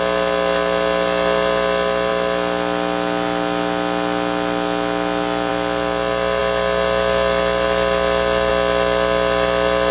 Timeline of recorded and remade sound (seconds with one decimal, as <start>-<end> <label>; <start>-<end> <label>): 0.0-9.9 recorded

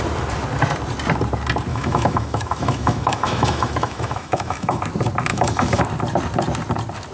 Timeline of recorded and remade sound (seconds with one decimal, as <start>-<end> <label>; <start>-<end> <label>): 0.0-1.7 recorded; 1.7-4.8 remade; 4.8-5.3 recorded; 5.3-5.8 remade; 5.8-7.1 recorded

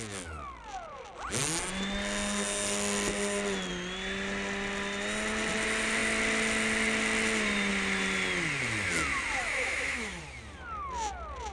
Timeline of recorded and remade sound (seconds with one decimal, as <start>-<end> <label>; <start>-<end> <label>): 0.0-9.4 recorded; 9.4-10.2 remade; 10.2-11.5 recorded

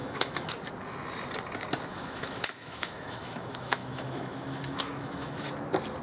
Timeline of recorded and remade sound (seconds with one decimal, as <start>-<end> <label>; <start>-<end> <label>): 0.0-0.5 remade; 0.5-1.9 recorded; 1.9-5.5 remade; 5.5-6.0 recorded

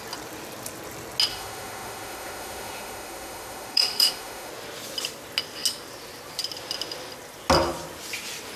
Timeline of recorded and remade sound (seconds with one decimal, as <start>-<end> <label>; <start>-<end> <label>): 0.0-1.3 recorded; 1.3-4.5 remade; 4.5-8.6 recorded

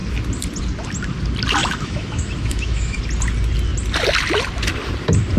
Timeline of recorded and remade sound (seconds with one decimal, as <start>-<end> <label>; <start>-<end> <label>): 0.0-1.6 recorded; 1.6-3.0 remade; 3.0-5.4 recorded